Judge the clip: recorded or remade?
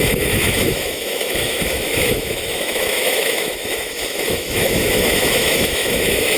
remade